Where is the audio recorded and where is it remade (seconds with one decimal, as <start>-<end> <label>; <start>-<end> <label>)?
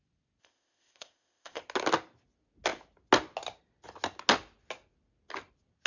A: 0.0-0.4 recorded; 0.4-1.6 remade; 1.6-5.9 recorded